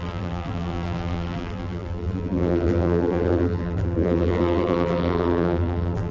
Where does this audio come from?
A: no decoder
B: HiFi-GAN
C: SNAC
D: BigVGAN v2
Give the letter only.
D